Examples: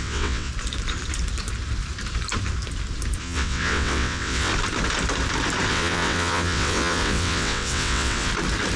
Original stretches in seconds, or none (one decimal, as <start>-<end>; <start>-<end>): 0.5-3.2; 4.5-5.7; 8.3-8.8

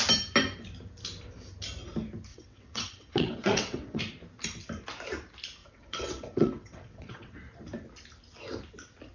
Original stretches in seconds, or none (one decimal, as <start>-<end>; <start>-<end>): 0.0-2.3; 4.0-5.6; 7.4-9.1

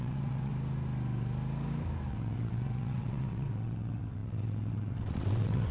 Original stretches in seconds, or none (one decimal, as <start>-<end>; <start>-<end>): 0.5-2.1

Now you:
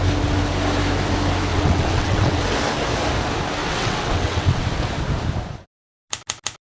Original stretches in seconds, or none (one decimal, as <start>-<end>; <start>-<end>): 0.0-1.5; 2.4-3.6; 4.6-6.7